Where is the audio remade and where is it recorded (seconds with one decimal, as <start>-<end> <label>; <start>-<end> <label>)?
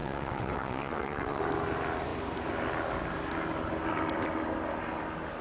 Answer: 0.0-1.4 remade; 1.4-5.4 recorded